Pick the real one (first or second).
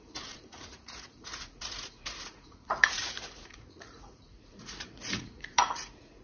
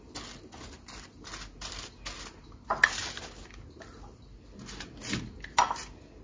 second